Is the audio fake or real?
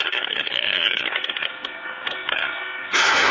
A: fake